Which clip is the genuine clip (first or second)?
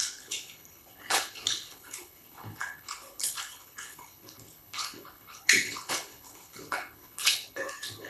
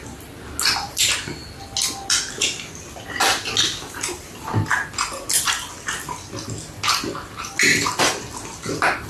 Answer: second